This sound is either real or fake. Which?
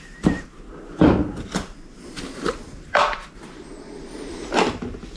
real